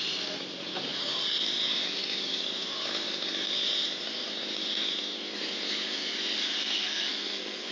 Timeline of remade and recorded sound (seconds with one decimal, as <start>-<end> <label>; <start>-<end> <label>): 0.0-6.6 recorded; 6.6-7.7 remade